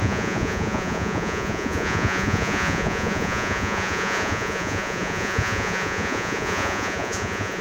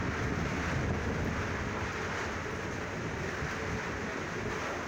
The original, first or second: second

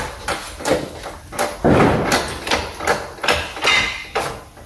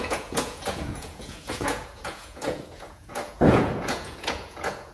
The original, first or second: first